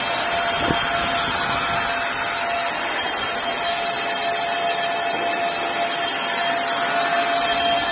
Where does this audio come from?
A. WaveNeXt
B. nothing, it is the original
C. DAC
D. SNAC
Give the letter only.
B